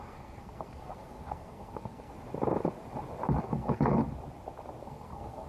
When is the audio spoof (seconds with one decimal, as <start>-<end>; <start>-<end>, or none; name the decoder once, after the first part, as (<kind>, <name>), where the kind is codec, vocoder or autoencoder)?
0.0-2.1 (codec, SNAC); 3.4-4.0; 4.8-5.5